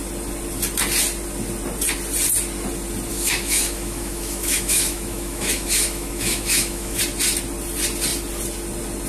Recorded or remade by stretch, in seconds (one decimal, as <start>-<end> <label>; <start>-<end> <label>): 0.0-3.1 recorded; 3.1-7.0 remade; 7.0-9.1 recorded